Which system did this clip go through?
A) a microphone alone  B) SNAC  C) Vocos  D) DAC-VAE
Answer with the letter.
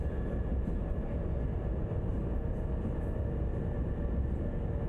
A